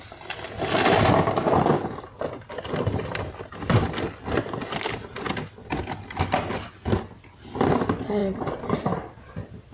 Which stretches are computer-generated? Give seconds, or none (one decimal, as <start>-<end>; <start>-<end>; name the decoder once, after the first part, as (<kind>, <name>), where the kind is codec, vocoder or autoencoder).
none